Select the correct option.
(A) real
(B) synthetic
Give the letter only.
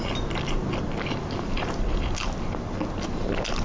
A